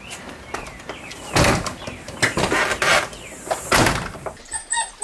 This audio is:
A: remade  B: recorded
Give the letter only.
B